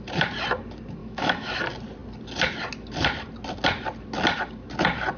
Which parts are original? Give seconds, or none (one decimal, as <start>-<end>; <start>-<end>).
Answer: 0.0-1.0; 1.6-5.2